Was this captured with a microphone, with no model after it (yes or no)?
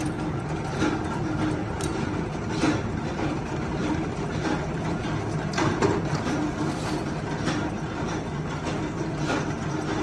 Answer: yes